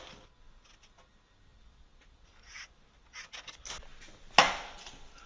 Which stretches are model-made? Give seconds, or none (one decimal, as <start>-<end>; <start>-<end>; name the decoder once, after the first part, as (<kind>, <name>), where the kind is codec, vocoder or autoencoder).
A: none